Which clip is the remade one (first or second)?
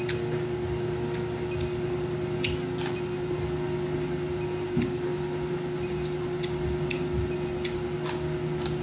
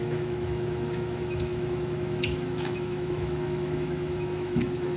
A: second